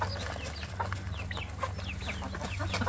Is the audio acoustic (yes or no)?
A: yes